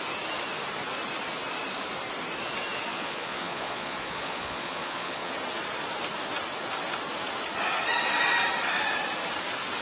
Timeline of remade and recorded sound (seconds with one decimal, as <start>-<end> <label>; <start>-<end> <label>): 0.0-2.9 recorded; 2.9-5.3 remade; 5.3-9.8 recorded